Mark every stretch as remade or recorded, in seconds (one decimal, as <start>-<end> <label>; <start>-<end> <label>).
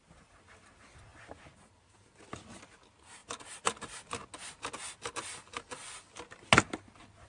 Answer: 0.0-7.3 recorded